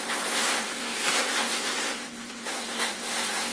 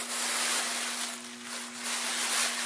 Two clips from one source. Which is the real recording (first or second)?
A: second